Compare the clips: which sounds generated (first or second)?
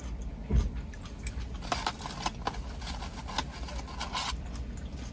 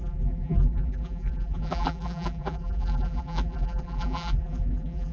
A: second